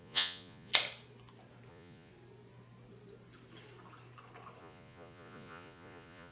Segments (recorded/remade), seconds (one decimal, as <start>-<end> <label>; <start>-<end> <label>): 0.0-0.7 remade; 0.7-1.7 recorded; 1.7-2.1 remade; 2.1-4.6 recorded; 4.6-6.3 remade